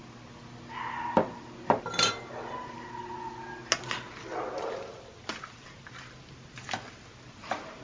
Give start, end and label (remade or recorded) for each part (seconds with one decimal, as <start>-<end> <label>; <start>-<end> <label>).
0.0-7.8 recorded